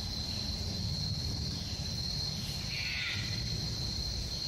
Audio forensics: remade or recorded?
remade